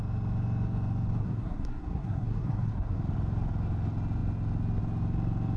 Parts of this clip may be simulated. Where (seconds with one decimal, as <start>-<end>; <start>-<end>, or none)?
1.2-3.0